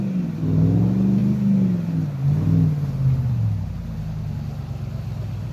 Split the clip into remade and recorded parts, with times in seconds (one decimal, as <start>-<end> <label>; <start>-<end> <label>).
0.0-5.5 recorded